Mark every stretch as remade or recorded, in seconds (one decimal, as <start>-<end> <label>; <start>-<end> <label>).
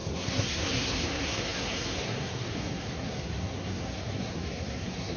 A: 0.0-5.2 remade